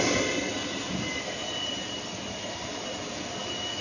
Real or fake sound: real